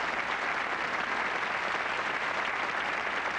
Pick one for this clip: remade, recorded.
recorded